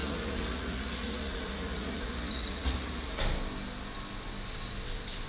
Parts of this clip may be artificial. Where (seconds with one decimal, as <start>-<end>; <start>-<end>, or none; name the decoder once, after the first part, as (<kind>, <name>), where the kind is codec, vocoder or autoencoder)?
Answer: 0.0-3.2 (vocoder, Vocos)